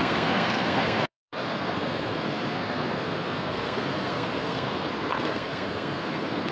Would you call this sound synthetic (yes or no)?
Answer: yes